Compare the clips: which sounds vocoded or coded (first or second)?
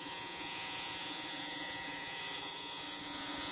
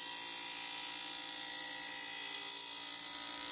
first